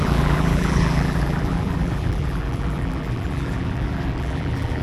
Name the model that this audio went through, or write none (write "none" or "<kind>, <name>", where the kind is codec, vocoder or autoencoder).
vocoder, BigVGAN v2